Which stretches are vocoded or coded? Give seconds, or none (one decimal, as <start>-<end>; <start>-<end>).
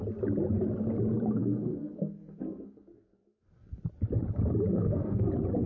1.4-3.8; 4.7-5.2